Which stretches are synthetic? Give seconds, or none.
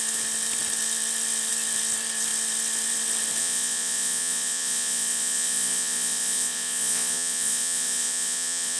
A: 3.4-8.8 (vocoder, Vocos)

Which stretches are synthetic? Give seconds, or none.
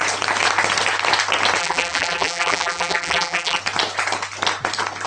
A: 1.6-3.6 (vocoder, BigVGAN v2)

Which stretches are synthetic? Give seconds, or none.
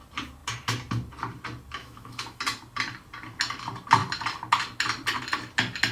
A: 1.8-2.4 (autoencoder, DAC-VAE)